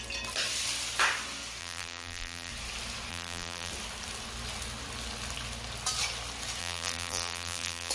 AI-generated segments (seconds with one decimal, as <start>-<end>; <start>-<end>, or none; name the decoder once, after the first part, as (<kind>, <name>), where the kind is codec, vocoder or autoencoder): 1.6-2.5 (vocoder, BigVGAN v2); 3.1-3.7; 6.6-7.9